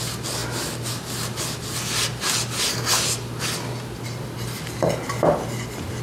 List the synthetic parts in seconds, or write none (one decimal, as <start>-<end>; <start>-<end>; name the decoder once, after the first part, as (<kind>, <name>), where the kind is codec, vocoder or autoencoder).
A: none